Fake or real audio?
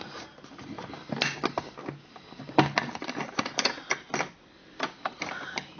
real